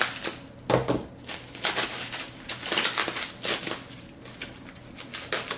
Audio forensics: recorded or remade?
recorded